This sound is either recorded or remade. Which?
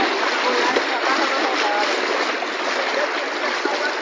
recorded